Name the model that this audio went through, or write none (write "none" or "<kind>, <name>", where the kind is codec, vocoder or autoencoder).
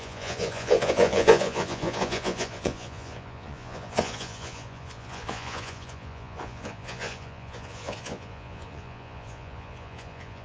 vocoder, Vocos